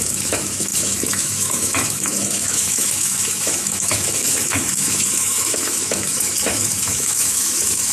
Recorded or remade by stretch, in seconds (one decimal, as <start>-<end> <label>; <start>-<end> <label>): 0.0-7.9 remade

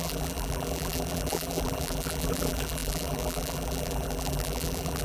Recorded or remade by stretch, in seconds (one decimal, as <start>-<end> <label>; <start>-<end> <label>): 0.0-5.0 remade